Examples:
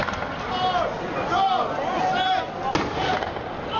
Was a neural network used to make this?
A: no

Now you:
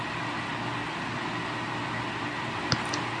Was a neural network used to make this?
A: no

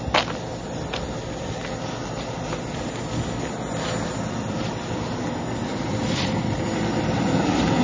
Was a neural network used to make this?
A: no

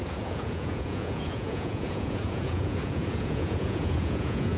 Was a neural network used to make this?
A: yes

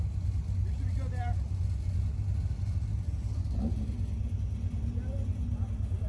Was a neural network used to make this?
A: no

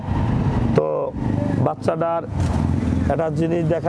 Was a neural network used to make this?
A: no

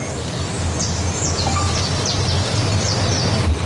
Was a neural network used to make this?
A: no